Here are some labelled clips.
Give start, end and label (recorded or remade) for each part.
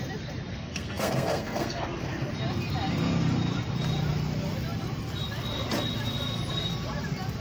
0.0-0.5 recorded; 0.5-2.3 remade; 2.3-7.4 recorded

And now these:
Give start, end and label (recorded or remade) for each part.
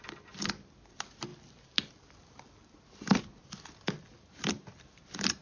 0.0-5.4 recorded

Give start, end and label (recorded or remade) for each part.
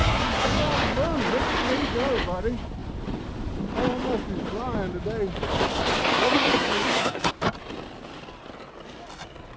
0.0-0.6 remade; 0.6-6.1 recorded; 6.1-7.3 remade; 7.3-9.6 recorded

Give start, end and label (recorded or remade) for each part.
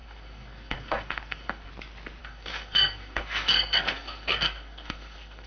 0.0-1.7 remade; 1.7-2.2 recorded; 2.2-5.5 remade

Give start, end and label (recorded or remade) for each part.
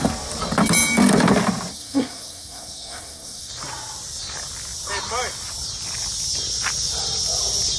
0.0-1.7 recorded; 1.7-3.5 remade; 3.5-7.8 recorded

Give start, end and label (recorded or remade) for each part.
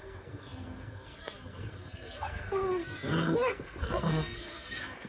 0.0-5.1 remade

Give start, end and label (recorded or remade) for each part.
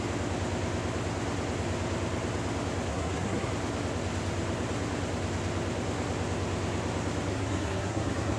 0.0-2.9 recorded; 2.9-3.5 remade; 3.5-7.3 recorded; 7.3-8.4 remade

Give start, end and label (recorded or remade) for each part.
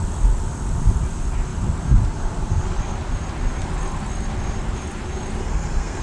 0.0-5.4 recorded; 5.4-6.0 remade